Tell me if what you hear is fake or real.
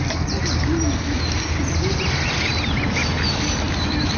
real